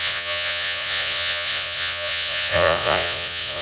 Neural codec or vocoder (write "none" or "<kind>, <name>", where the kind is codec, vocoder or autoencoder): vocoder, Vocos